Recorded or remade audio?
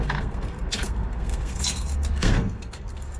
remade